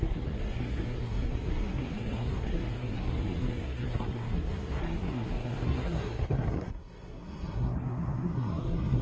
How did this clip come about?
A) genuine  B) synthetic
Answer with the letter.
B